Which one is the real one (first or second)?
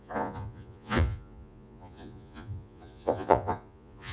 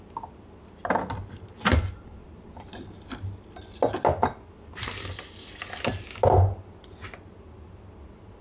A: second